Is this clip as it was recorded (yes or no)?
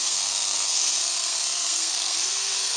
no